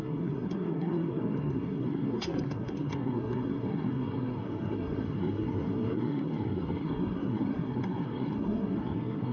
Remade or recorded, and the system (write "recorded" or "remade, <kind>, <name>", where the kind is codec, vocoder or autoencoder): remade, codec, SNAC